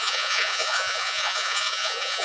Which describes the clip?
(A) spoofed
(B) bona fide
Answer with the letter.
A